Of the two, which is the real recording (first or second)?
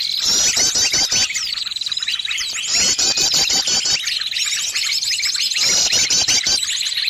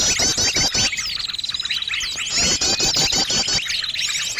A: second